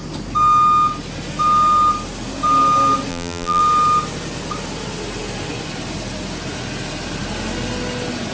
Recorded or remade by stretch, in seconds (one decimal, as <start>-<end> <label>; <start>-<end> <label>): 0.0-3.1 recorded; 3.1-3.6 remade; 3.6-8.3 recorded